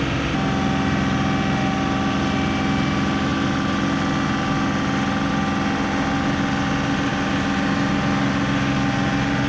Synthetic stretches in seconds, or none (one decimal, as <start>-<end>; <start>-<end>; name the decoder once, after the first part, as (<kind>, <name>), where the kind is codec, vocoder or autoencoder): none